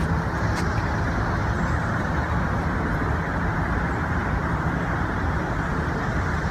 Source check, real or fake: real